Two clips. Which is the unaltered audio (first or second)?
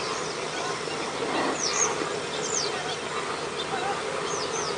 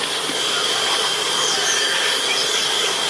first